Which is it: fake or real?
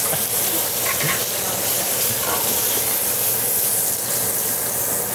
real